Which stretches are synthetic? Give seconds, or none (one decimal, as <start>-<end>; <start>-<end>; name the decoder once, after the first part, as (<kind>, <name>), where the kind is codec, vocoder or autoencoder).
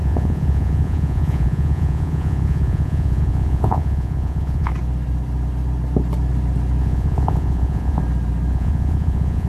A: 0.0-4.7 (vocoder, Vocos); 6.8-8.0; 8.5-9.5